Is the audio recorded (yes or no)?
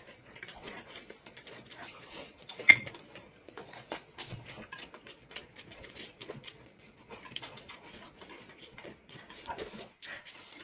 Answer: no